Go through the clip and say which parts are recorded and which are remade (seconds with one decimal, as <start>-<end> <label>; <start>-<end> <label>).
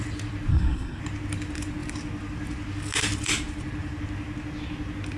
0.0-0.5 recorded; 0.5-1.0 remade; 1.0-5.2 recorded